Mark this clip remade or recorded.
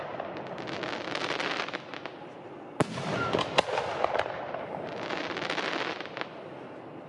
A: recorded